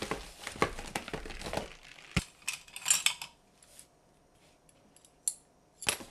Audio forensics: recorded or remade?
recorded